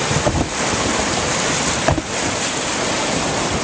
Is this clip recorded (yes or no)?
yes